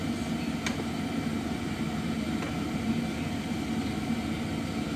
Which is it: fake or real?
real